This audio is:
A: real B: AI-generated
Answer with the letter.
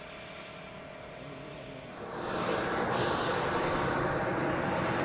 A